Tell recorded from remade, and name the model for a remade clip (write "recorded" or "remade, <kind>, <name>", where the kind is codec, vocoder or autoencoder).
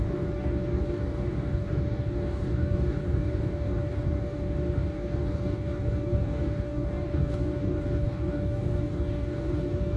remade, codec, DAC